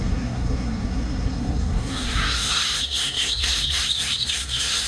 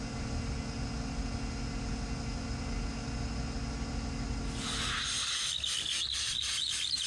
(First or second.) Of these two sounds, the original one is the second